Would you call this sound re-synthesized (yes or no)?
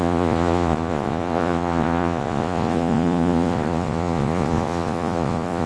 yes